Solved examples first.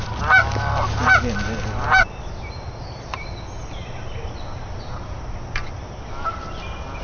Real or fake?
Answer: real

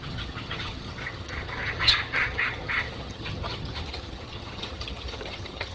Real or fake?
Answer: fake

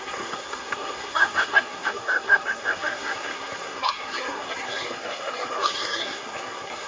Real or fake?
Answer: fake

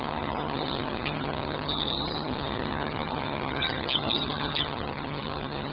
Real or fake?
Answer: fake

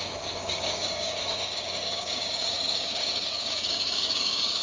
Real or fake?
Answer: fake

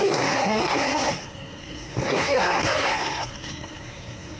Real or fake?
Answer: fake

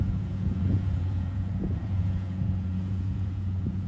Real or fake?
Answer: fake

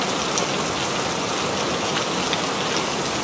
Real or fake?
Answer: real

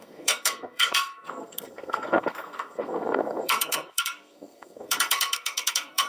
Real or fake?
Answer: fake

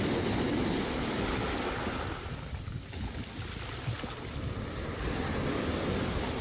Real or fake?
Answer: real